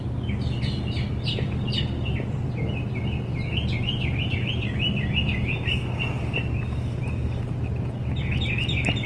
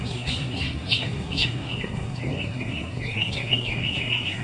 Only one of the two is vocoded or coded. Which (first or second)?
second